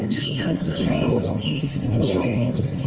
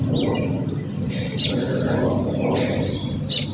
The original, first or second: second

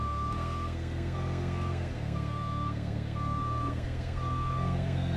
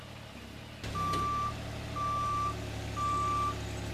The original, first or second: second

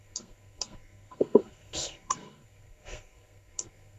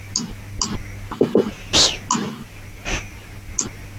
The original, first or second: second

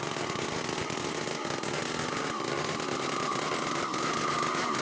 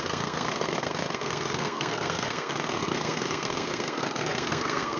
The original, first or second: first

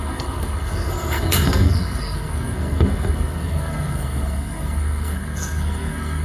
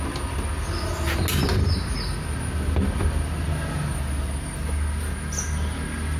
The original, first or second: second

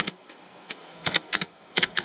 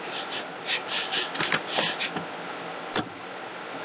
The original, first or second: second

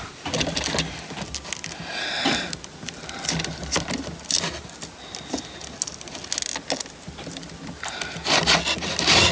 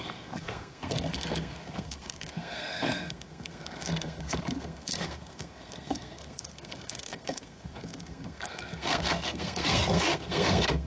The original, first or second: first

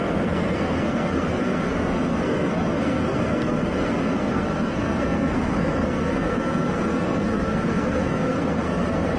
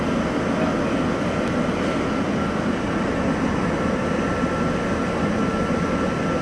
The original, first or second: second